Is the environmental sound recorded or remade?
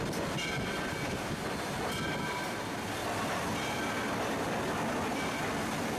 recorded